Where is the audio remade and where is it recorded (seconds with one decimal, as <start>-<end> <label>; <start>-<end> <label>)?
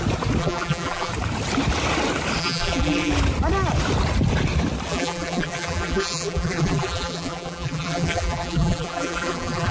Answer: 0.0-0.4 recorded; 0.4-1.1 remade; 1.1-2.4 recorded; 2.4-3.1 remade; 3.1-4.9 recorded; 4.9-9.7 remade